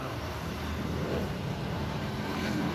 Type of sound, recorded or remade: remade